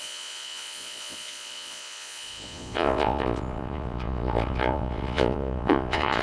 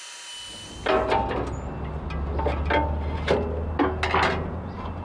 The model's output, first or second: first